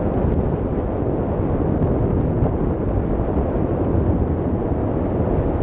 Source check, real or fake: real